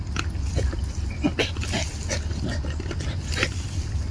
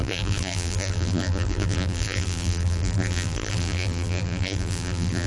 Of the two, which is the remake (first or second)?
second